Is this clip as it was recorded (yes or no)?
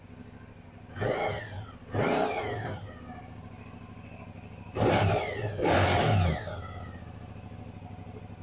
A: yes